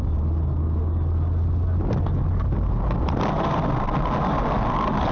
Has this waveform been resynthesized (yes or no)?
no